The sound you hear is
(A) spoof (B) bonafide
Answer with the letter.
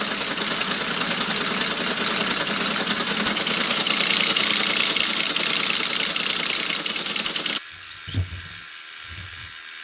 B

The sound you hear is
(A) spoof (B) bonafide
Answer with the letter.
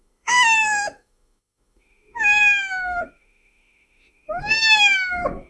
A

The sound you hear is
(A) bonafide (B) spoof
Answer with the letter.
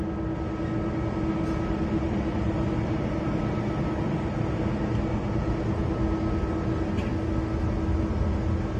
A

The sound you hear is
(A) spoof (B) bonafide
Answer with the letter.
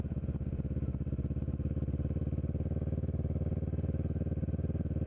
B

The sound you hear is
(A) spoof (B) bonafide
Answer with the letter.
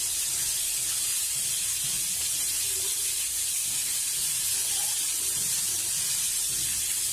B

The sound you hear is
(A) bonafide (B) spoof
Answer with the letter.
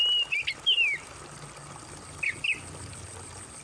A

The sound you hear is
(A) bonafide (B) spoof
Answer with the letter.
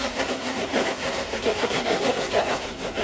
B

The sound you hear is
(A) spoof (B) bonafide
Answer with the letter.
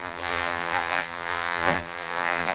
A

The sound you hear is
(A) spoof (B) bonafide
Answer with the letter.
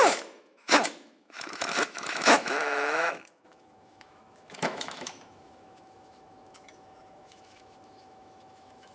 A